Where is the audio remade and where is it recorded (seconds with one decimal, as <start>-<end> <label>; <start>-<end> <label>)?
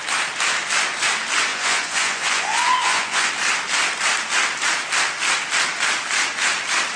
0.0-1.5 recorded; 1.5-3.3 remade; 3.3-7.0 recorded